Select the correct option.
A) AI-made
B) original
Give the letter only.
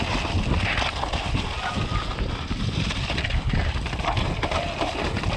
B